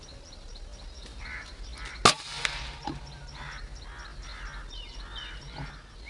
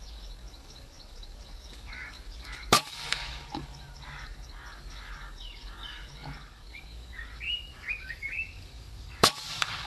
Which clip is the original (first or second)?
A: first